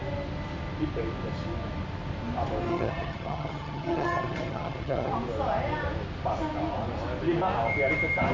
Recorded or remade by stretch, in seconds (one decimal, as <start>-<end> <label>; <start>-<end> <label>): 0.0-2.7 recorded; 2.7-5.1 remade; 5.1-8.3 recorded